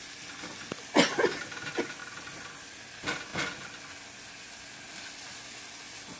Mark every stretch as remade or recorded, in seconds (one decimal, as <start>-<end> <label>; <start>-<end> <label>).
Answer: 0.0-6.2 recorded